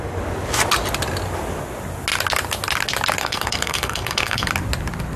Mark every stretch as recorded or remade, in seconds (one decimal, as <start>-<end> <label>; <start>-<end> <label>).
0.0-3.2 recorded; 3.2-4.5 remade; 4.5-5.2 recorded

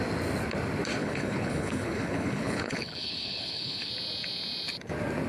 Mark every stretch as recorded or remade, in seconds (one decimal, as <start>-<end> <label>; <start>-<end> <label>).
0.0-1.0 recorded; 1.0-3.9 remade; 3.9-5.3 recorded

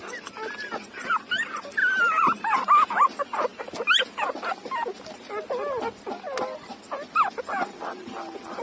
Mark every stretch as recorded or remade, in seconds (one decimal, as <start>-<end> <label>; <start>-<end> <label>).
0.0-1.8 recorded; 1.8-2.7 remade; 2.7-8.6 recorded

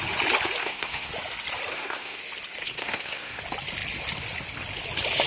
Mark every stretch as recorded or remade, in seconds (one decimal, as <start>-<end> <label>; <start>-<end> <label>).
0.0-0.6 recorded; 0.6-1.1 remade; 1.1-1.7 recorded; 1.7-2.2 remade; 2.2-2.6 recorded; 2.6-3.4 remade; 3.4-5.3 recorded

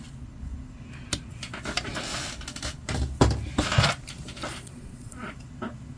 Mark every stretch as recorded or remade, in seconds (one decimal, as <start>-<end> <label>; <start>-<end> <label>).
0.0-4.5 recorded; 4.5-5.3 remade; 5.3-6.0 recorded

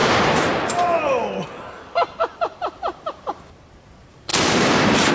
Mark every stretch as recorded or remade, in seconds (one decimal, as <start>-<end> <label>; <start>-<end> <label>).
0.0-5.1 remade

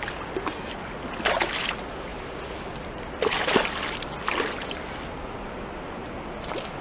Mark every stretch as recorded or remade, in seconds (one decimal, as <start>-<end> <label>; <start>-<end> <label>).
0.0-6.8 recorded

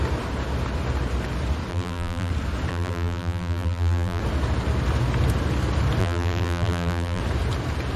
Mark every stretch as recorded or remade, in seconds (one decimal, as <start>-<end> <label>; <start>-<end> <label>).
0.0-1.7 recorded; 1.7-2.3 remade; 2.3-2.7 recorded; 2.7-4.2 remade; 4.2-6.0 recorded; 6.0-7.2 remade; 7.2-8.0 recorded